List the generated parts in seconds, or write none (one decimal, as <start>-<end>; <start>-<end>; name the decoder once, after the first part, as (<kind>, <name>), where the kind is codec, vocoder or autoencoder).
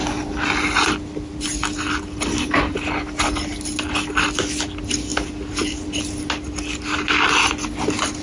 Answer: none